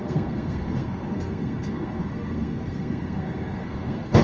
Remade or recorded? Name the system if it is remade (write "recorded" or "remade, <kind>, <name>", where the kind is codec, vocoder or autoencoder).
remade, codec, SNAC